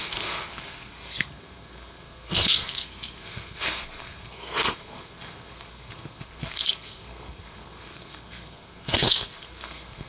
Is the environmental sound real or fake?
fake